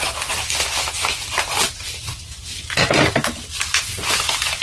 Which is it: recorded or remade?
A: remade